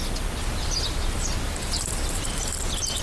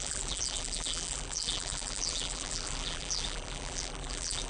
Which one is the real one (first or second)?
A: first